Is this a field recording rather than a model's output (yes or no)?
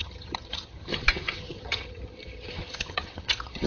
no